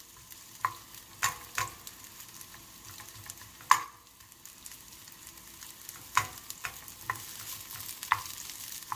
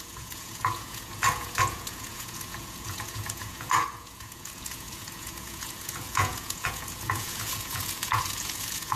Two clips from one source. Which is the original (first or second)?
first